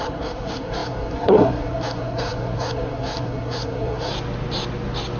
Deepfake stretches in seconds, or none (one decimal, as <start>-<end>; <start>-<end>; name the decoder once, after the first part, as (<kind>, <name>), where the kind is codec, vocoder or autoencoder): 0.0-4.1 (codec, SNAC)